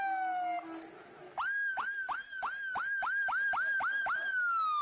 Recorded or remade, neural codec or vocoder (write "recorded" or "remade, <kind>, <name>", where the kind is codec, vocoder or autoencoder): recorded